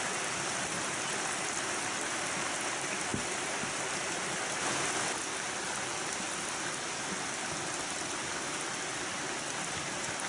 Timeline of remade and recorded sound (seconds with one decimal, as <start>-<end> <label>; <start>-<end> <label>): 0.0-10.3 recorded